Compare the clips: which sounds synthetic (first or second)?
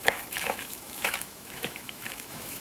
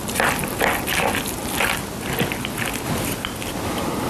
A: first